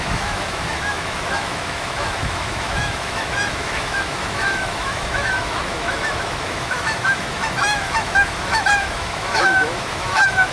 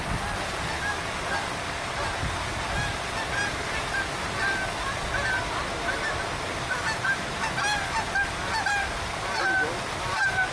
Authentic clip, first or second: second